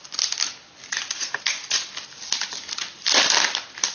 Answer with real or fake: real